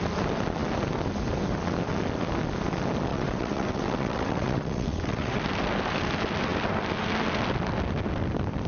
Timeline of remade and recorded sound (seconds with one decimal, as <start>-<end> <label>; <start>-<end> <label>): 0.0-3.1 recorded; 3.1-5.4 remade; 5.4-8.7 recorded